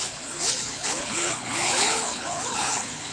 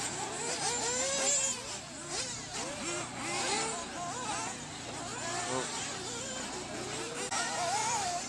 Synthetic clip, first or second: first